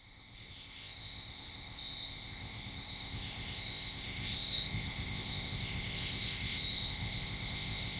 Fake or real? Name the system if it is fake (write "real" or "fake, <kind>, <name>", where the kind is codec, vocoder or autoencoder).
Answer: fake, codec, ZipCodec